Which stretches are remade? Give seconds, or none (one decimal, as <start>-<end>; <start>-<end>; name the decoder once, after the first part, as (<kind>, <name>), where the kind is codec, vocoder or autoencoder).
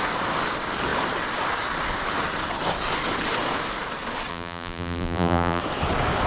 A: 4.3-5.6 (vocoder, BigVGAN v2)